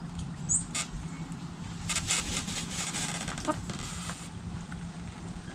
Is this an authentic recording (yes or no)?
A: yes